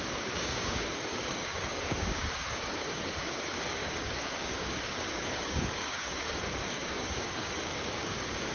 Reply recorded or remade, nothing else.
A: remade